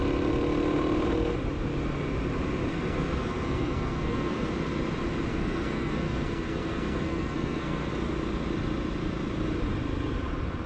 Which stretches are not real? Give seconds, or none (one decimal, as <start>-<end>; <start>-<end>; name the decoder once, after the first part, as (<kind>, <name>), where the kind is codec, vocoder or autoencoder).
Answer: 2.7-4.5 (codec, SNAC); 5.3-7.9